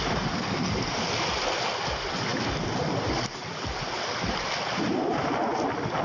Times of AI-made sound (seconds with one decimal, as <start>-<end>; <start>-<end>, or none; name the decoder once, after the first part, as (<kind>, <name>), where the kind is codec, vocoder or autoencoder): none